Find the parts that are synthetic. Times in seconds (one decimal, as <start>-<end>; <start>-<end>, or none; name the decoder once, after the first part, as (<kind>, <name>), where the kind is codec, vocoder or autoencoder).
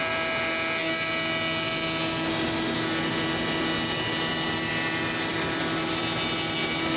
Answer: none